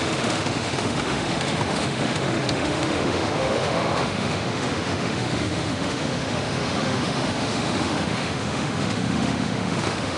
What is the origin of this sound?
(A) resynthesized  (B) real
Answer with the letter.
A